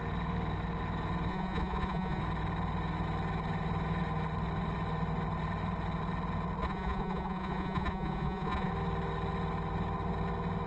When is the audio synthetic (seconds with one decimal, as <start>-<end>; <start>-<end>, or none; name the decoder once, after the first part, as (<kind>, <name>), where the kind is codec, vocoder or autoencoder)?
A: 1.3-2.2 (vocoder, Vocos); 6.6-8.7